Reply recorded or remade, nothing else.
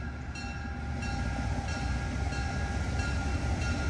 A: recorded